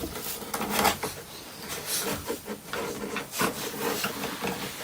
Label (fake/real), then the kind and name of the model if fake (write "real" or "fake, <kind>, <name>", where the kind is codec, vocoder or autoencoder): real